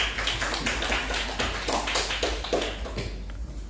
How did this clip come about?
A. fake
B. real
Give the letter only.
B